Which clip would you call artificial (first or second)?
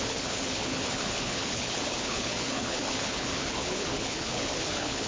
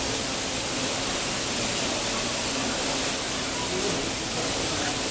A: first